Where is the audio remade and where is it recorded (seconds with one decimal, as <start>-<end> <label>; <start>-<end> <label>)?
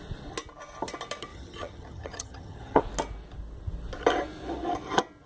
0.0-1.3 recorded; 1.3-2.8 remade; 2.8-5.3 recorded